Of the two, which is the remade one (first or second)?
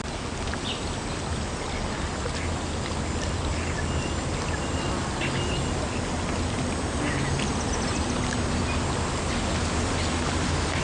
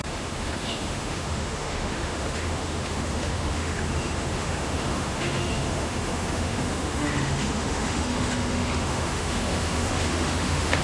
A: second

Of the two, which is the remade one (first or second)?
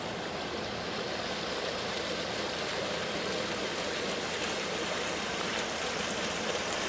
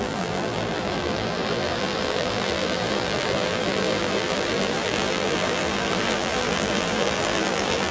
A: second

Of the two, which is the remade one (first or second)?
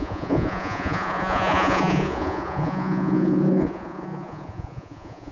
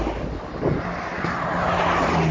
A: first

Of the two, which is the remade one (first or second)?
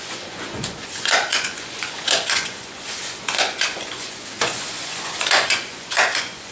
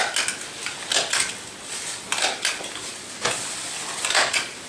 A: first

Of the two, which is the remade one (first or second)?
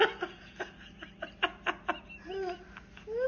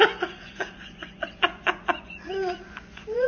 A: second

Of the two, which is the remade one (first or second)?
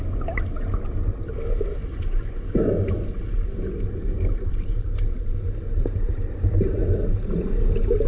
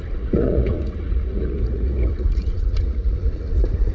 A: second